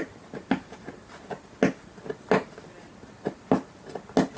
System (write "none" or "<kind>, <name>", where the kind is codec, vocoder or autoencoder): none